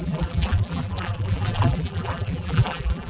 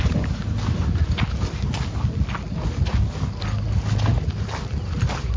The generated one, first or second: first